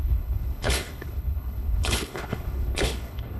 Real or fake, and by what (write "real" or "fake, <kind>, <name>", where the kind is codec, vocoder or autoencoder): fake, codec, HILCodec